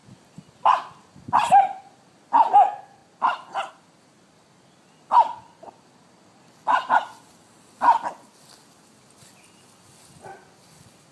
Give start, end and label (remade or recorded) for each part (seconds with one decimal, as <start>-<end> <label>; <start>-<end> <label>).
0.0-11.1 recorded